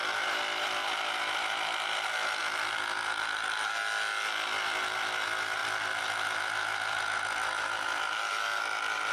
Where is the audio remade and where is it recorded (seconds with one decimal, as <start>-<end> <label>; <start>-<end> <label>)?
0.0-1.4 remade; 1.4-5.6 recorded; 5.6-6.4 remade; 6.4-7.4 recorded; 7.4-8.3 remade; 8.3-9.1 recorded